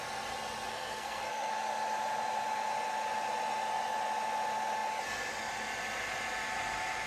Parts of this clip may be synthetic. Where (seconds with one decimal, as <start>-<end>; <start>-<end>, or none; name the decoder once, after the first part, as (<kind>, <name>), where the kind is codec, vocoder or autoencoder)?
0.7-1.5 (codec, SNAC)